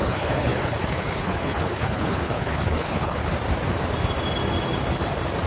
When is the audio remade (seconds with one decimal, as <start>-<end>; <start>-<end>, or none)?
0.0-3.2